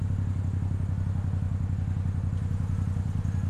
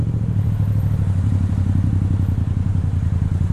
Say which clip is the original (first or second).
first